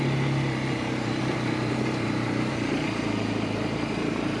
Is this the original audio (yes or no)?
no